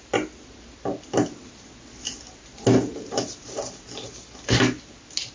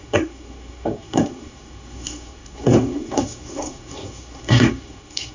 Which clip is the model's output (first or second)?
second